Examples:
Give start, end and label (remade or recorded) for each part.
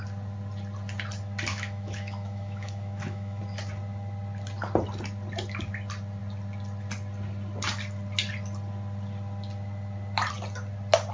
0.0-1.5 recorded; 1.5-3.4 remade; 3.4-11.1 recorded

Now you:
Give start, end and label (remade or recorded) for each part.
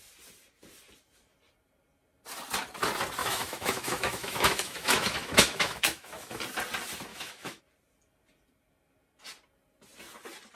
0.0-3.2 recorded; 3.2-6.4 remade; 6.4-7.1 recorded; 7.1-7.6 remade; 7.6-10.5 recorded